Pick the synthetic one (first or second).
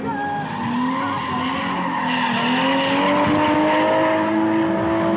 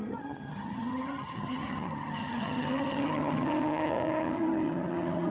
second